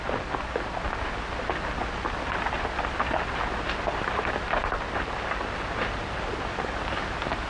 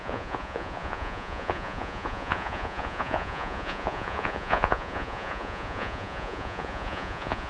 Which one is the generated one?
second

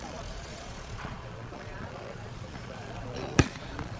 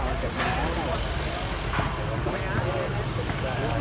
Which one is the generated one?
first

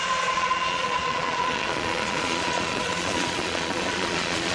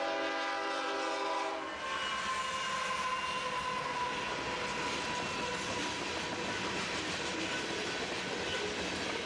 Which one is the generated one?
first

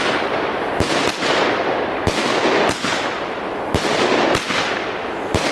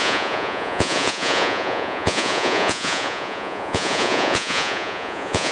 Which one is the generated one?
second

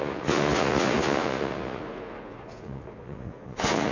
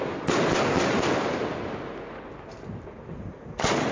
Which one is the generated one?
first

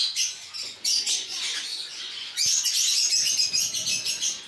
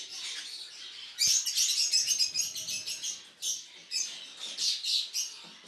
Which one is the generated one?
first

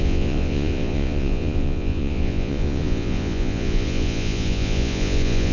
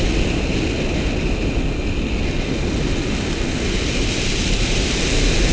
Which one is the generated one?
first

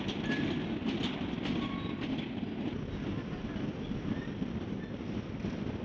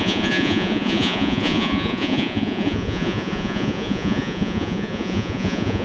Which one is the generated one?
second